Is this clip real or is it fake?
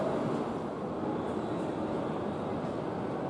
real